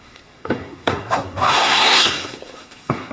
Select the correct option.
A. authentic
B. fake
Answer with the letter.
B